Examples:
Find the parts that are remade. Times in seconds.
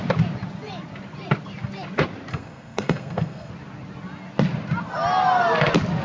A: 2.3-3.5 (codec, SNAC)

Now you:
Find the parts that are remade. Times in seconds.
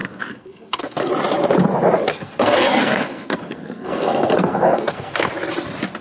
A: 0.0-1.1 (codec, SNAC); 2.1-5.3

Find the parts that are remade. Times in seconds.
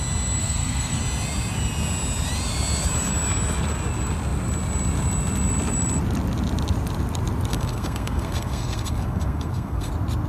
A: 0.4-1.0 (codec, SNAC); 7.5-9.9